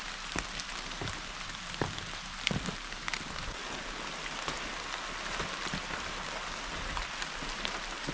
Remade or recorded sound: recorded